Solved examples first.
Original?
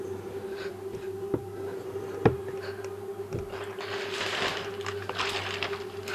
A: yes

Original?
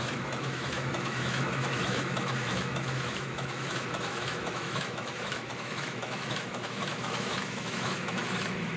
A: no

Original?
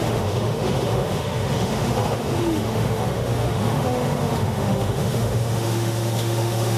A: no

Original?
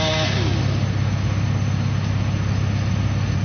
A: yes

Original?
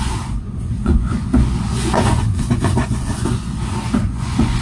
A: no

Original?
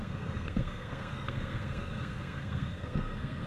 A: no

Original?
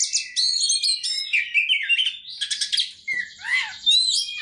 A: yes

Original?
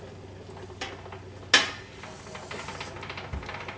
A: yes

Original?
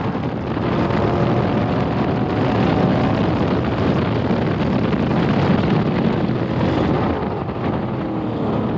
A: yes